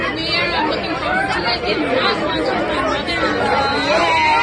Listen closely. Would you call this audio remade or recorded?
recorded